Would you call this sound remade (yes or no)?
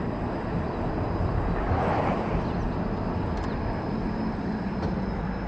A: no